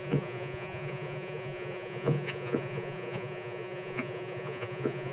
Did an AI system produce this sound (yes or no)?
yes